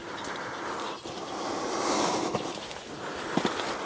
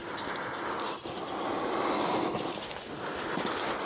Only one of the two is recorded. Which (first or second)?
second